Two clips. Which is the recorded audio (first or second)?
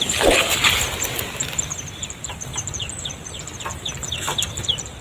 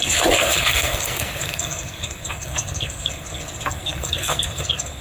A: first